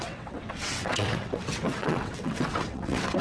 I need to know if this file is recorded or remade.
remade